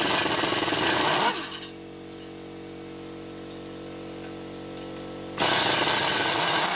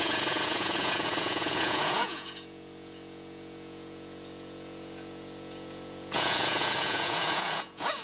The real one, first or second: first